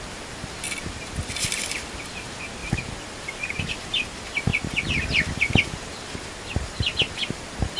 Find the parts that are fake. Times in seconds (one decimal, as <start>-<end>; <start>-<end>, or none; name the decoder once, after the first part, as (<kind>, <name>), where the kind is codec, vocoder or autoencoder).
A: none